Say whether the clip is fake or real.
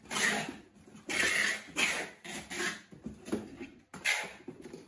real